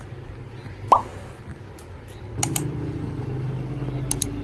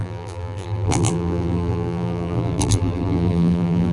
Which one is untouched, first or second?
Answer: first